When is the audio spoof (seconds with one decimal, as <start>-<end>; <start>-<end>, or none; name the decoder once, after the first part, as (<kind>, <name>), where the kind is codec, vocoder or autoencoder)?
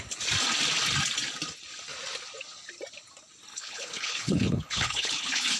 3.5-5.6 (codec, HILCodec)